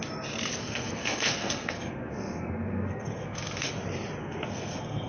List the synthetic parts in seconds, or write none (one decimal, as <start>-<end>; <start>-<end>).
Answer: 0.6-3.7; 4.2-5.1